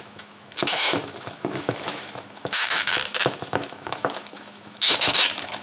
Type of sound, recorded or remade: remade